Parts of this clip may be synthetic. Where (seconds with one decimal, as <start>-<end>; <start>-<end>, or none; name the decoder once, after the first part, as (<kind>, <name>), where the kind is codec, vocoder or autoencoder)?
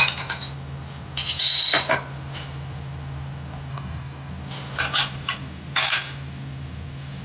3.7-4.3 (codec, DAC)